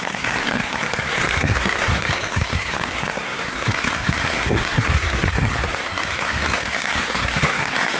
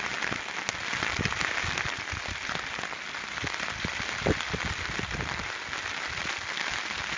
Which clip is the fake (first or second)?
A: first